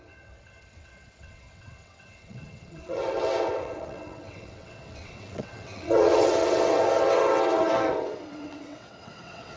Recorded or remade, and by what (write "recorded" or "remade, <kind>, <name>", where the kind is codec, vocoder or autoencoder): remade, vocoder, WaveNeXt